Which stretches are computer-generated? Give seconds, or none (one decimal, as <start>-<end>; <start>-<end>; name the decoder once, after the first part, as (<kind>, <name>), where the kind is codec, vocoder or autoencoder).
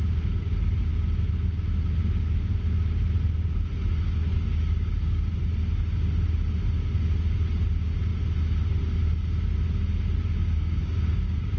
3.9-5.3 (codec, DAC); 10.4-11.6